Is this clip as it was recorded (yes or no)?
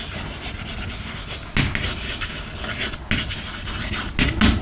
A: yes